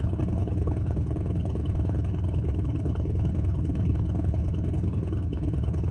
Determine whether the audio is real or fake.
fake